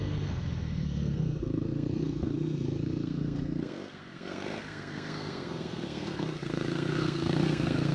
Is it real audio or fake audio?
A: fake